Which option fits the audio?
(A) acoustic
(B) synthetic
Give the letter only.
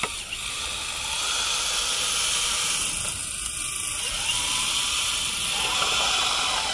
A